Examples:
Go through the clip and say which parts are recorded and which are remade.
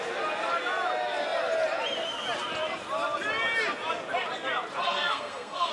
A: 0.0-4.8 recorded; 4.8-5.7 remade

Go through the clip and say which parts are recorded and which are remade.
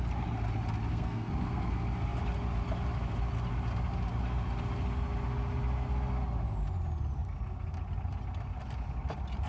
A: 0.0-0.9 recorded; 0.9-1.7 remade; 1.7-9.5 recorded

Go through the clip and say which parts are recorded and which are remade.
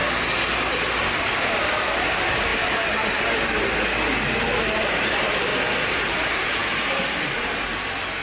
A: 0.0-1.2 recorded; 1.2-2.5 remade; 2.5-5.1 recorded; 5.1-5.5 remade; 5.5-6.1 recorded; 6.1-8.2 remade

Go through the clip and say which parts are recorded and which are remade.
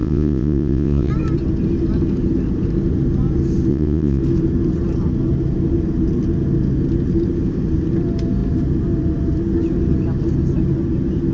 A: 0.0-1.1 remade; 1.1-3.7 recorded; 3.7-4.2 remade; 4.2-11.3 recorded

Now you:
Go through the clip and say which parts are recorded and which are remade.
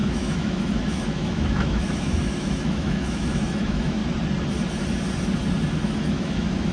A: 0.0-4.0 remade; 4.0-5.8 recorded; 5.8-6.7 remade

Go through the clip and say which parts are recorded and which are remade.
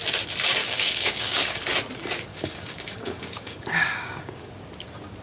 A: 0.0-0.6 recorded; 0.6-1.6 remade; 1.6-2.3 recorded; 2.3-4.5 remade; 4.5-5.2 recorded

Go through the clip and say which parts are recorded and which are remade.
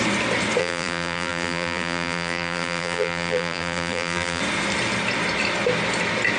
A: 0.0-0.6 recorded; 0.6-4.4 remade; 4.4-6.4 recorded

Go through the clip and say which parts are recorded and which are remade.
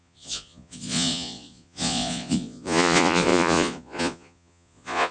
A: 0.0-5.1 remade